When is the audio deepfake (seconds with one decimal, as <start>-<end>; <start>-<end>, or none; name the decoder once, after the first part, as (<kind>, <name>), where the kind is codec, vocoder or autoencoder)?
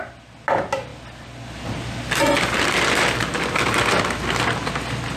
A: none